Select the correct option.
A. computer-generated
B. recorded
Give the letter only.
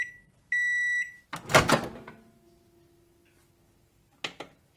B